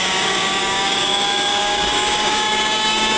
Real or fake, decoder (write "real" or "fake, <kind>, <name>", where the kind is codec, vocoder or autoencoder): fake, codec, DAC